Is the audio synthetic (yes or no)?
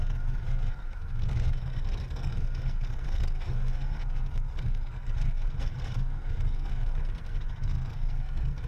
yes